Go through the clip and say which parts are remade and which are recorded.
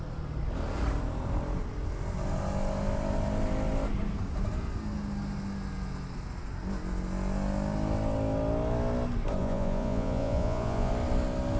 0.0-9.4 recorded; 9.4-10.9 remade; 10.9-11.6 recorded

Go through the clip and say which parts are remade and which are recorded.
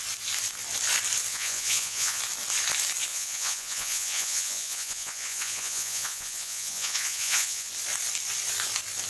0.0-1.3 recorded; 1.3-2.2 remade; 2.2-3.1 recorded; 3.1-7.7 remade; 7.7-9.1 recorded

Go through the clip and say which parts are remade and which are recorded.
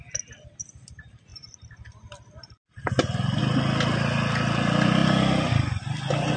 0.0-6.4 recorded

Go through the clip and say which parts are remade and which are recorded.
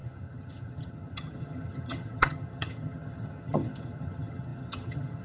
0.0-5.2 remade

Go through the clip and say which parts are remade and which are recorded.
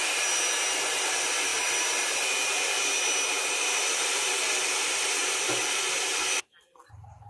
0.0-7.3 recorded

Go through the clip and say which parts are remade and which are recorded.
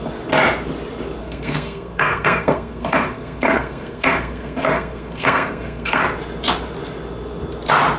0.0-1.2 recorded; 1.2-6.0 remade; 6.0-8.0 recorded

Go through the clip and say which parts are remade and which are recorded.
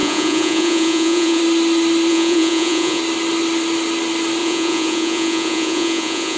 0.0-1.4 remade; 1.4-2.1 recorded; 2.1-3.0 remade; 3.0-4.4 recorded; 4.4-6.4 remade